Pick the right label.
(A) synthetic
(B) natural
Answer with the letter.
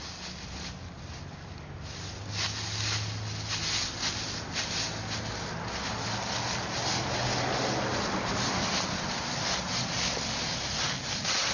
B